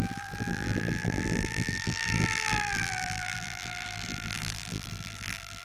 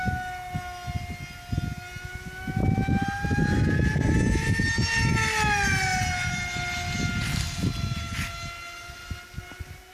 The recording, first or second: second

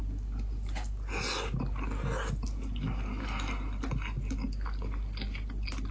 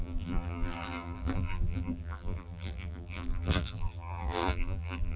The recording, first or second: first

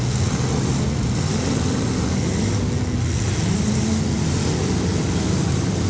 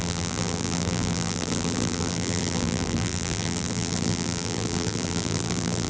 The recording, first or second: first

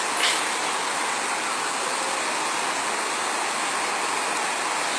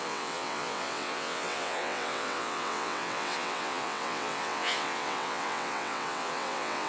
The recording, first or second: first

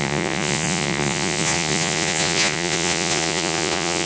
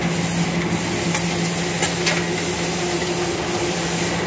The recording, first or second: second